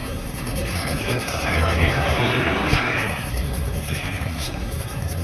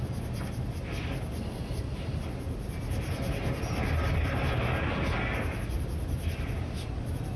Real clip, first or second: second